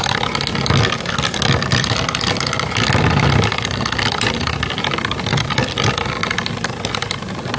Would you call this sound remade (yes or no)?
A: no